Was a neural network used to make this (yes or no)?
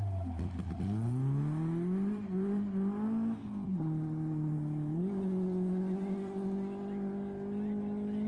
no